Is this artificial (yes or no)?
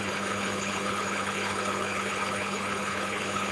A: yes